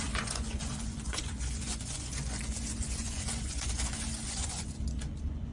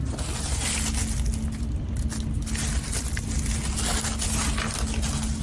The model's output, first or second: first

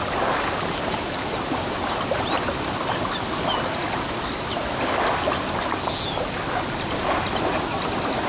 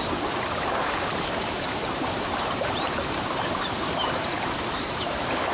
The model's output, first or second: second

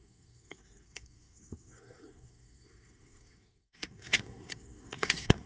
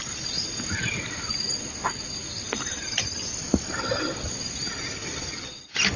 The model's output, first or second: first